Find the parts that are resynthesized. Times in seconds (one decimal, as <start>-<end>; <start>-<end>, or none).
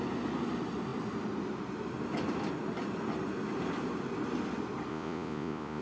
4.9-5.8